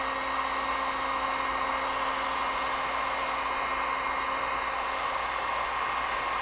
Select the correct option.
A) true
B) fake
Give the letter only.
A